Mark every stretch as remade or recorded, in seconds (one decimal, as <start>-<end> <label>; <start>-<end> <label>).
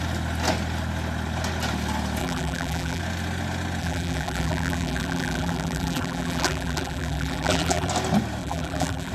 0.0-2.2 recorded; 2.2-3.0 remade; 3.0-3.8 recorded; 3.8-7.9 remade; 7.9-8.4 recorded; 8.4-9.1 remade